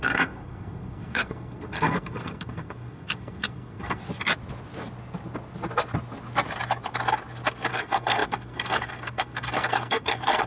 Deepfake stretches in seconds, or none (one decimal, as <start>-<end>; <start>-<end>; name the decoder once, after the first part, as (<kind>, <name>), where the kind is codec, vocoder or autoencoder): 0.0-4.0 (codec, SNAC); 7.7-10.5